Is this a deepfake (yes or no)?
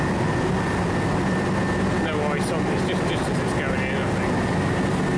no